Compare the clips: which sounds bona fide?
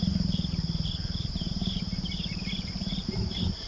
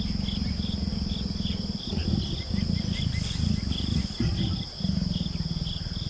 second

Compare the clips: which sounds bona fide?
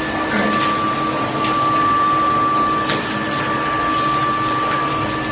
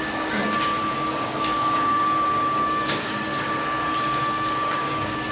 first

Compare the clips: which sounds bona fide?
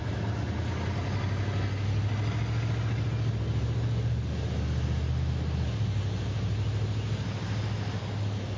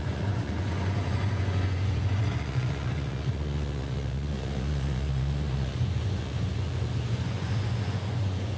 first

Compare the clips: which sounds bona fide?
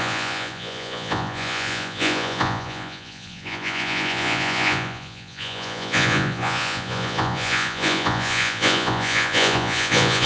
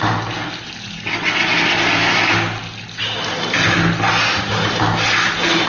second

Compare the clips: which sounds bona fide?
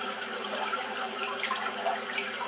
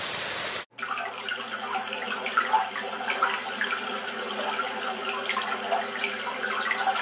second